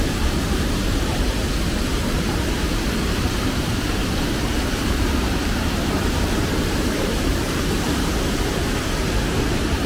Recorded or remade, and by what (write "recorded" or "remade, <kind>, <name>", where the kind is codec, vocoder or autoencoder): remade, vocoder, BigVGAN v2